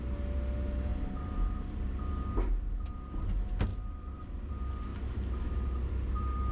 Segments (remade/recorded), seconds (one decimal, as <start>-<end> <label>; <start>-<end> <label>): 0.0-0.9 recorded; 0.9-2.1 remade; 2.1-3.7 recorded; 3.7-4.5 remade; 4.5-4.9 recorded; 4.9-6.5 remade